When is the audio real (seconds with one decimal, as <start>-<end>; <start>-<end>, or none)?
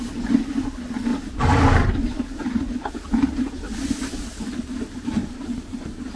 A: 0.0-5.2